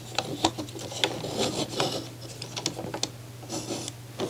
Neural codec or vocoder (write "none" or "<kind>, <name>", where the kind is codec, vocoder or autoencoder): none